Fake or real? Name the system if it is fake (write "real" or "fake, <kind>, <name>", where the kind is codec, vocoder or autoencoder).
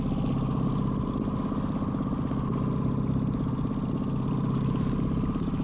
real